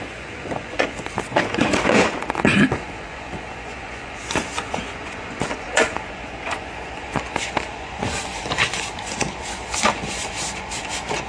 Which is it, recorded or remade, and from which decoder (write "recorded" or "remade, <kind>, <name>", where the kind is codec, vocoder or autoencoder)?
remade, vocoder, Vocos